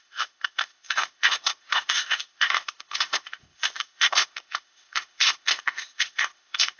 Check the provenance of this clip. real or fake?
fake